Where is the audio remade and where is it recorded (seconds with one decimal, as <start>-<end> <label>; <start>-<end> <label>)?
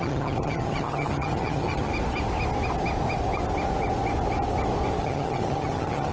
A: 0.0-1.9 remade; 1.9-5.0 recorded; 5.0-6.1 remade